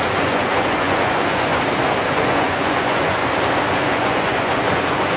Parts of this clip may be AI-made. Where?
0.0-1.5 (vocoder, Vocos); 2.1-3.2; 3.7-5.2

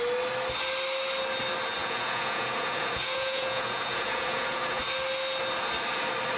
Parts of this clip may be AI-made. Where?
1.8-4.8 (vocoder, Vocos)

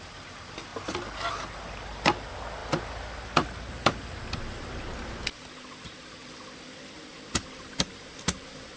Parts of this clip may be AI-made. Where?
none

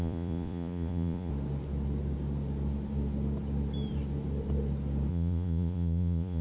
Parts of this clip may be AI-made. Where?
0.0-1.3 (vocoder, Vocos); 5.1-6.4

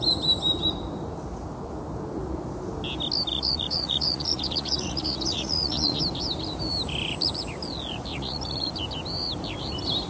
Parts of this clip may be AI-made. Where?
3.3-6.0 (vocoder, Vocos); 8.1-8.7

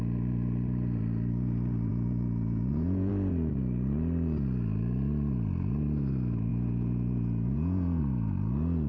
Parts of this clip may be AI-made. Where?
1.9-3.1 (vocoder, Vocos); 6.5-8.0

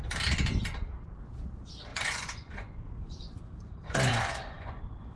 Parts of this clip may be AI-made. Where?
1.9-3.4 (vocoder, Vocos); 4.1-4.8